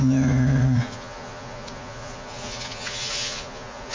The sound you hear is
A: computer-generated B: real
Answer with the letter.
A